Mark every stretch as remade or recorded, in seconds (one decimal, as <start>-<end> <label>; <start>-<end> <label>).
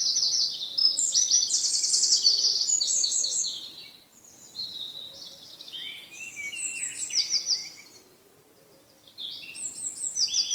0.0-3.0 recorded; 3.0-3.6 remade; 3.6-5.5 recorded; 5.5-7.0 remade; 7.0-10.5 recorded